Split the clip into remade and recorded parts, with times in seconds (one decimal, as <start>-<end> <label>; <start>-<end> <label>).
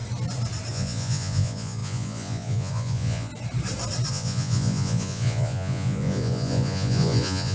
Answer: 0.0-0.7 recorded; 0.7-3.3 remade; 3.3-4.1 recorded; 4.1-7.5 remade